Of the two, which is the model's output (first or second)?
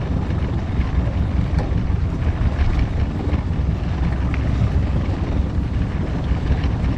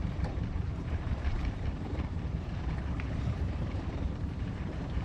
second